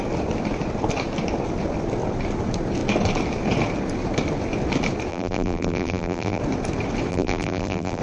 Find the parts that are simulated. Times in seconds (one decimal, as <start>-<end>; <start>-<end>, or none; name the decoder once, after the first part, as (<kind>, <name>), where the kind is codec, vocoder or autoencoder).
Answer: 5.1-6.4 (vocoder, BigVGAN v2); 7.1-8.0